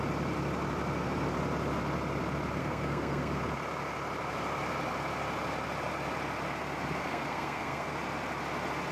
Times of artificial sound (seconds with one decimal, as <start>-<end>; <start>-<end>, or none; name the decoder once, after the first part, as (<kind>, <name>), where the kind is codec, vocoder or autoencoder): 2.6-3.4 (codec, SNAC); 7.0-7.9

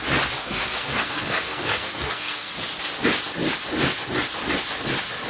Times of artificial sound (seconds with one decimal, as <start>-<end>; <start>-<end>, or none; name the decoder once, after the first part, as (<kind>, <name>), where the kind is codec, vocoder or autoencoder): 0.4-2.5 (codec, SNAC)

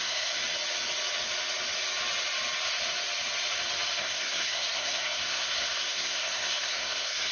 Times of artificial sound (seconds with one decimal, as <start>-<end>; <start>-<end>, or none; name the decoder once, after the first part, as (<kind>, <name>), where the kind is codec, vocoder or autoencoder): 0.0-0.4 (codec, SNAC); 4.0-7.3

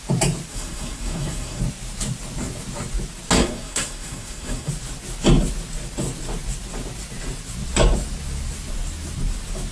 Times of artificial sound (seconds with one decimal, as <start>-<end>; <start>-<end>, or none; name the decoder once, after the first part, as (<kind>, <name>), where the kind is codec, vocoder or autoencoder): 0.5-1.6 (codec, SNAC); 3.4-4.7

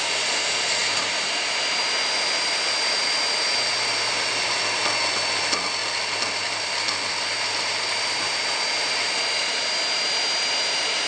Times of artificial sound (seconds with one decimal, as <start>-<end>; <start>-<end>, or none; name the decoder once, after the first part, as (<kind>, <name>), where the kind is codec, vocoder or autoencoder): none